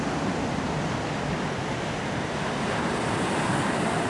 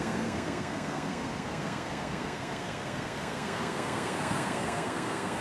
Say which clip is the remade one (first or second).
second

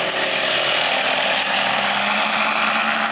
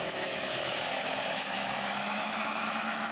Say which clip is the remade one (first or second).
second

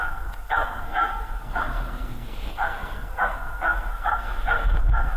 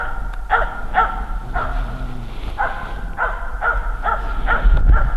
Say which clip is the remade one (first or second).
first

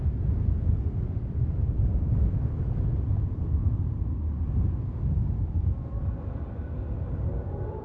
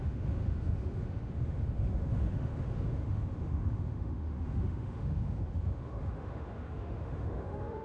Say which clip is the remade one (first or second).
second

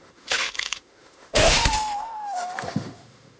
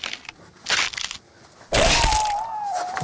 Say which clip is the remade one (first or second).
first